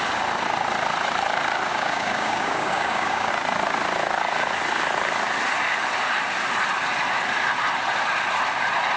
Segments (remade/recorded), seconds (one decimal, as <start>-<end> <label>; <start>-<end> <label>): 0.0-1.7 recorded; 1.7-3.3 remade; 3.3-9.0 recorded